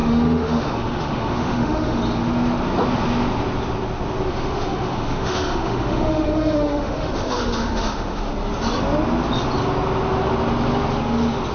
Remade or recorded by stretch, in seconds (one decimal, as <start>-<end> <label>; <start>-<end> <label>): 0.0-2.0 remade; 2.0-4.3 recorded; 4.3-8.3 remade; 8.3-11.5 recorded